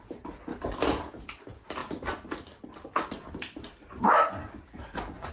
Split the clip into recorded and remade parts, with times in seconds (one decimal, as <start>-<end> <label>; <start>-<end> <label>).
0.0-0.5 recorded; 0.5-1.1 remade; 1.1-4.4 recorded; 4.4-5.3 remade